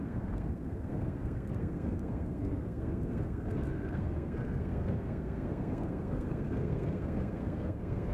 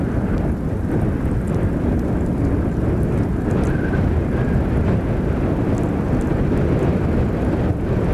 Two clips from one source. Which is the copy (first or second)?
first